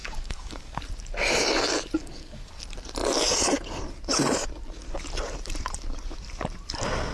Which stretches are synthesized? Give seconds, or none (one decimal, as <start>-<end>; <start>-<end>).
0.0-0.8; 2.0-2.6